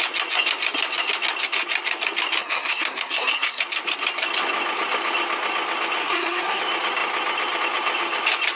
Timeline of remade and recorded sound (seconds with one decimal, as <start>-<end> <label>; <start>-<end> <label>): 0.0-2.4 recorded; 2.4-3.6 remade; 3.6-6.0 recorded; 6.0-6.6 remade; 6.6-8.6 recorded